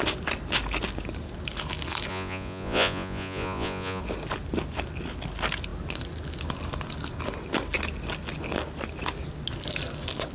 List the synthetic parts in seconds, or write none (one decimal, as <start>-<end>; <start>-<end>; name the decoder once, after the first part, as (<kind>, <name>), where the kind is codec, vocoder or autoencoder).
2.1-4.0 (vocoder, Vocos)